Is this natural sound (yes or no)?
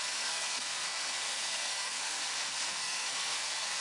no